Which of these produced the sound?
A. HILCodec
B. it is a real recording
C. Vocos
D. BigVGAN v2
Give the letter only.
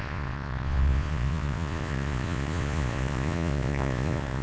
C